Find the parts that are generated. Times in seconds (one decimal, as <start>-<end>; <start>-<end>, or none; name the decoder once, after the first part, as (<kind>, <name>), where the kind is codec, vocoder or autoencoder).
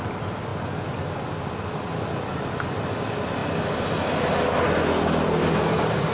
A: none